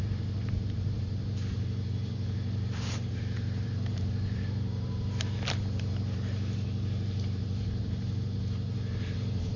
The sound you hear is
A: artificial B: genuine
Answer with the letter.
A